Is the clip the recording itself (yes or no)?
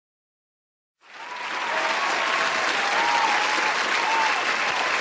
yes